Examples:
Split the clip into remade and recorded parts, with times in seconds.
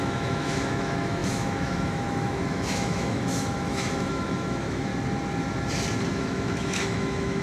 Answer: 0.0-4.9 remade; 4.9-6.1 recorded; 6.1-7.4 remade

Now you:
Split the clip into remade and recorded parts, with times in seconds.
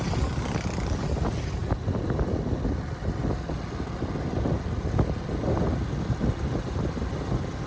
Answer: 0.0-7.7 recorded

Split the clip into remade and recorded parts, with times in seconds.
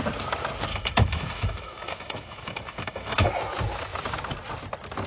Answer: 0.0-0.7 recorded; 0.7-3.3 remade; 3.3-5.1 recorded